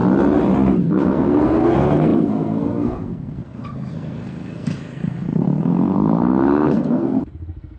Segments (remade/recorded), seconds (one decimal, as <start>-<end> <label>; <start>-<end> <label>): 0.0-0.8 recorded; 0.8-7.8 remade